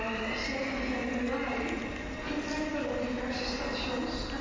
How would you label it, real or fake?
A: real